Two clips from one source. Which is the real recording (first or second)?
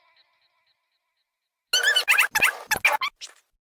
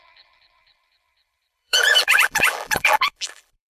first